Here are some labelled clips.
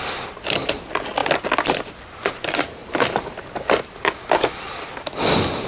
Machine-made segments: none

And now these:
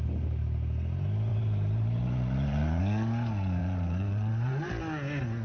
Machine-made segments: 1.3-2.8 (vocoder, BigVGAN v2); 3.6-4.7

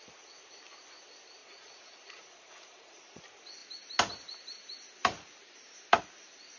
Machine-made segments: 1.4-3.2 (vocoder, Vocos)

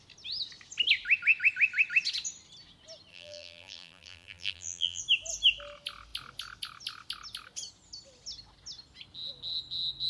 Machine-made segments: 3.1-5.0 (vocoder, BigVGAN v2)

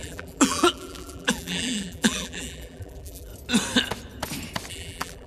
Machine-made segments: 0.0-3.3 (vocoder, BigVGAN v2); 4.7-5.3

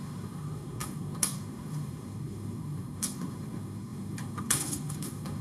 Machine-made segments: 0.0-5.4 (codec, SNAC)

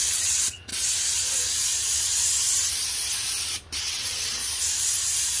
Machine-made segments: 0.0-0.7 (vocoder, WaveNeXt); 3.8-4.4

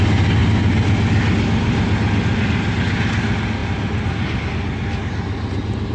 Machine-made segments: none